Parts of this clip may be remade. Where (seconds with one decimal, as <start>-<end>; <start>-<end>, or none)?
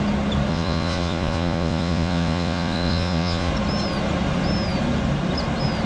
0.5-3.5